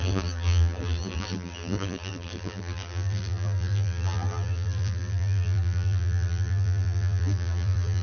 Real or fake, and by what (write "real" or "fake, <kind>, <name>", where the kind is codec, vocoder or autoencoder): fake, vocoder, BigVGAN v2